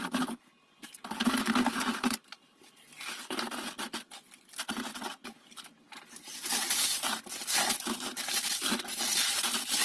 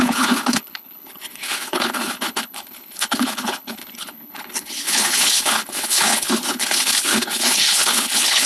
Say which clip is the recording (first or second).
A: first